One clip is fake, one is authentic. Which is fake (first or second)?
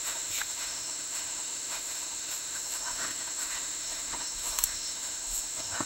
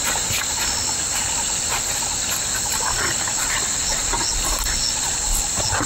first